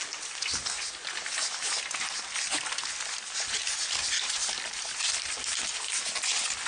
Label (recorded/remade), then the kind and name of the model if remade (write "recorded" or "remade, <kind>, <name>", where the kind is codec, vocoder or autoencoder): recorded